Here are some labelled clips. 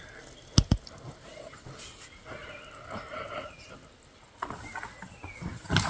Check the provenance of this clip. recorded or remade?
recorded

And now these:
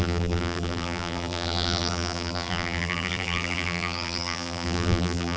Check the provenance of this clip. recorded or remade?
remade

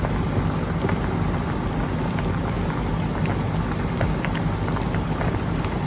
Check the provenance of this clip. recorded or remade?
recorded